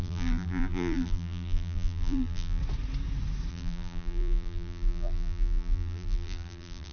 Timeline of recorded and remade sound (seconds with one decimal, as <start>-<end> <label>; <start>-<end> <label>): 0.0-2.6 remade; 2.6-3.5 recorded; 3.5-6.9 remade